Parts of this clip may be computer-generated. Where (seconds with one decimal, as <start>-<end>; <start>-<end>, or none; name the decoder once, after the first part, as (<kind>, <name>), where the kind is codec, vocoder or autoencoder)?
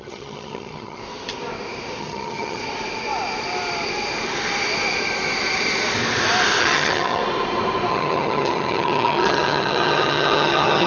0.0-1.0 (vocoder, HiFi-GAN); 2.0-2.6; 6.6-7.2; 7.9-10.9